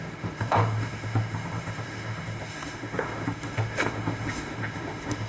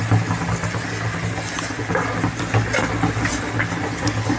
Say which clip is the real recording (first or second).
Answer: second